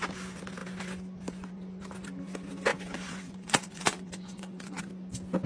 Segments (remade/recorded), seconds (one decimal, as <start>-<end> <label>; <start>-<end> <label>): 0.0-2.7 recorded; 2.7-4.8 remade; 4.8-5.5 recorded